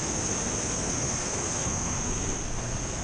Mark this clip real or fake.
fake